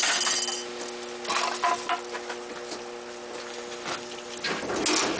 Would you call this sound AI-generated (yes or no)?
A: no